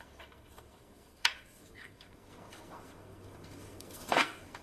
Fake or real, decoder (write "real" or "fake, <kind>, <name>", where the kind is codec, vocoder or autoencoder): fake, codec, SNAC